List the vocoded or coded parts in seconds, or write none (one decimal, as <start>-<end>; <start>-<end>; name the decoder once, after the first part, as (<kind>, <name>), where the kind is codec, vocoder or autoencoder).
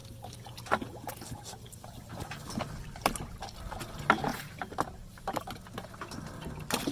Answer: none